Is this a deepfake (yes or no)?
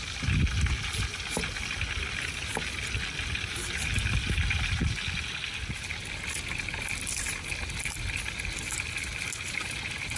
no